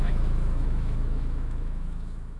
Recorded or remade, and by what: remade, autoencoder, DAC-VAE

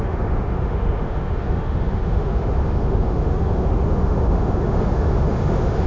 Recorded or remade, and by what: remade, autoencoder, DAC-VAE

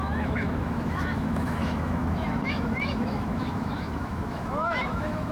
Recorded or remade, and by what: remade, autoencoder, DAC-VAE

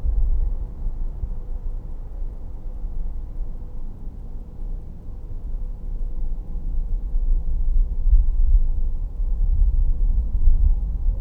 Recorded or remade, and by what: recorded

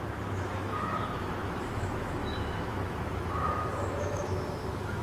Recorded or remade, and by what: remade, autoencoder, DAC-VAE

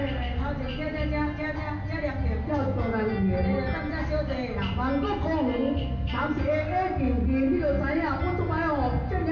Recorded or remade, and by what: recorded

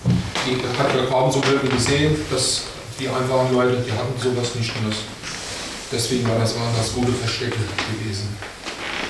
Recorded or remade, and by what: recorded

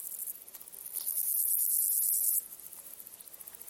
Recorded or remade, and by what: recorded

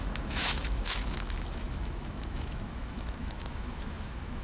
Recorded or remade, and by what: remade, autoencoder, DAC-VAE